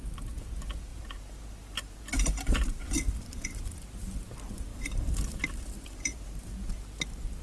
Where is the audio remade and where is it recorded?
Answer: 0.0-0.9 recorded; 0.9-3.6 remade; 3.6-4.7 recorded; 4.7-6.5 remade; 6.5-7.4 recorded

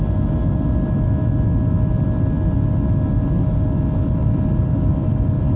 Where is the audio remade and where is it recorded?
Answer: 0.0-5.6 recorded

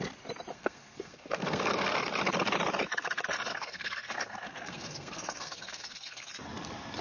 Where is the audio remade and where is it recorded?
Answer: 0.0-0.5 recorded; 0.5-1.9 remade; 1.9-3.5 recorded; 3.5-6.3 remade; 6.3-7.0 recorded